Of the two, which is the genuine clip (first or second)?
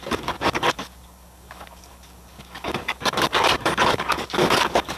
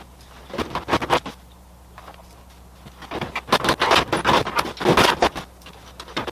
second